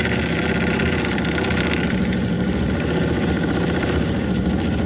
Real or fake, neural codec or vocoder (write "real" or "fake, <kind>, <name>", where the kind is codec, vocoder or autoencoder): fake, vocoder, BigVGAN v2